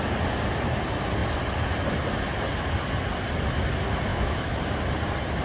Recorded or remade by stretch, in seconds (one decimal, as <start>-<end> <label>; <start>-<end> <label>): 0.0-4.1 recorded; 4.1-4.6 remade; 4.6-5.4 recorded